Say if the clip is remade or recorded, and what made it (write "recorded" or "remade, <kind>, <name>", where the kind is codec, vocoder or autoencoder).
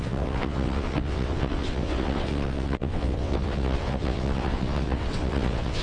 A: remade, vocoder, WaveNeXt